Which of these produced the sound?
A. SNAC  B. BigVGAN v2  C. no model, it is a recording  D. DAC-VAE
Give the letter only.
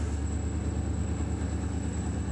C